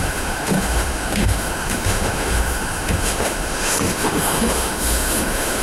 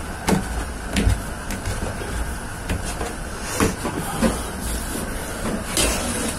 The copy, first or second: first